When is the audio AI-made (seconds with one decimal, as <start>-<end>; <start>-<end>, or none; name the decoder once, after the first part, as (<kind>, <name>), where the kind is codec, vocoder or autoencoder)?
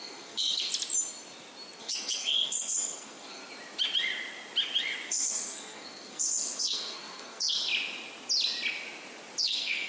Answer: 0.0-0.7 (codec, SNAC); 1.8-3.4; 5.1-7.7; 9.4-9.9